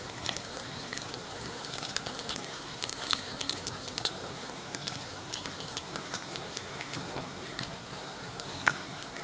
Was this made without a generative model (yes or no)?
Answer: no